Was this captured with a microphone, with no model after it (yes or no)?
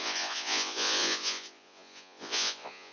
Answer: no